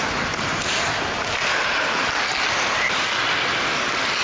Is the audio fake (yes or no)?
no